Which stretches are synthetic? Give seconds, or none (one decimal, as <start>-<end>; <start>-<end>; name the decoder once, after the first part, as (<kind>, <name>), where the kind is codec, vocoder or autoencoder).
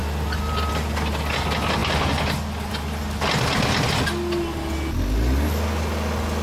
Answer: none